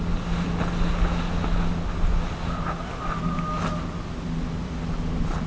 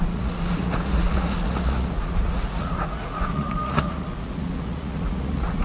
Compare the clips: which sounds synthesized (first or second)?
second